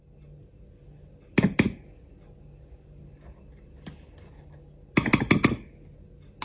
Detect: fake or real real